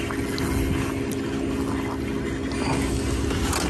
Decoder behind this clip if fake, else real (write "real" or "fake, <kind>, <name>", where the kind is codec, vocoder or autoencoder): real